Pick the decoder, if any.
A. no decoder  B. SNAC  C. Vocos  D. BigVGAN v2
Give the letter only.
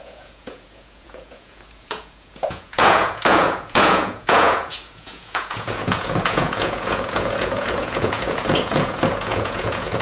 C